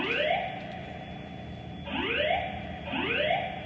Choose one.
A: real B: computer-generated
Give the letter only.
A